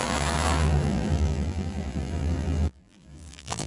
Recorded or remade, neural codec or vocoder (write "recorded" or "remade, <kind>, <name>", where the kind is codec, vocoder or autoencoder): remade, vocoder, BigVGAN v2